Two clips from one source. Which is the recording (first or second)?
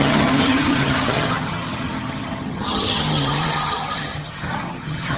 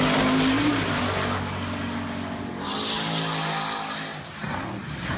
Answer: second